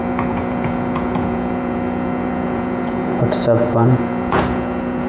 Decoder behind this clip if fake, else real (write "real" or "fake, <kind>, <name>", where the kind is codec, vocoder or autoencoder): fake, vocoder, Vocos